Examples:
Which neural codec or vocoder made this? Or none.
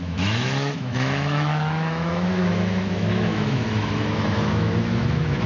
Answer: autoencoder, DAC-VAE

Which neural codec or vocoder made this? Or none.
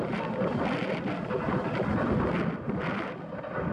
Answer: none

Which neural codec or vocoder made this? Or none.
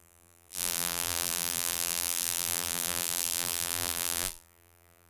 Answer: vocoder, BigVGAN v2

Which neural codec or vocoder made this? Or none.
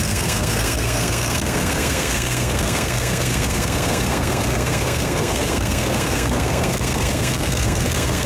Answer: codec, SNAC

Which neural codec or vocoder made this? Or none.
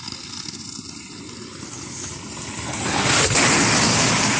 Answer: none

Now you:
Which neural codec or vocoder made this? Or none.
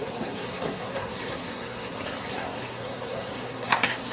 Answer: codec, SNAC